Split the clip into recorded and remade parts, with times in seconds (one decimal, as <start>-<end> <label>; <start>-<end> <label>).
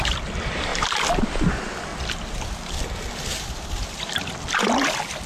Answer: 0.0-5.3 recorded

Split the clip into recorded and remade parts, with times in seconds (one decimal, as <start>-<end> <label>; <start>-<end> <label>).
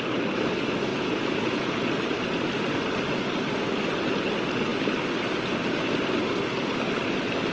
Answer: 0.0-0.9 recorded; 0.9-1.7 remade; 1.7-7.5 recorded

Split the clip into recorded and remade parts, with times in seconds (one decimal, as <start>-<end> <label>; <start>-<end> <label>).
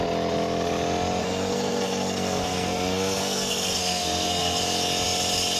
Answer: 0.0-1.2 recorded; 1.2-4.6 remade; 4.6-5.6 recorded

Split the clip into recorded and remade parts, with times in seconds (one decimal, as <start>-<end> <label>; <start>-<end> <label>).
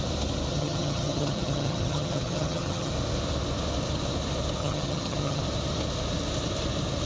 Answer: 0.0-0.5 recorded; 0.5-2.9 remade; 2.9-4.6 recorded; 4.6-5.4 remade; 5.4-7.1 recorded